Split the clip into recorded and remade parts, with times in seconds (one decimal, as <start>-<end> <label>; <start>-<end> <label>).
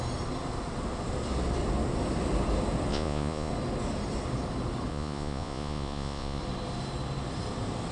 0.0-2.9 recorded; 2.9-3.5 remade; 3.5-4.9 recorded; 4.9-6.4 remade; 6.4-7.9 recorded